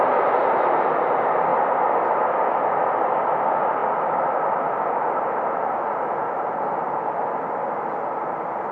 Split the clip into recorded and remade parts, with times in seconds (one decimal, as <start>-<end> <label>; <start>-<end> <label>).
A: 0.0-8.7 recorded